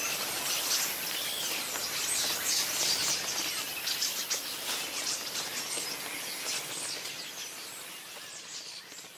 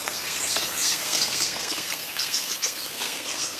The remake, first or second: second